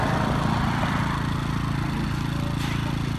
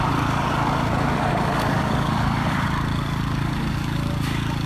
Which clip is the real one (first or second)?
first